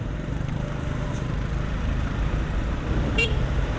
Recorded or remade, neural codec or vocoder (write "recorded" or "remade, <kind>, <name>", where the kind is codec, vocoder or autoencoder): remade, vocoder, BigVGAN v2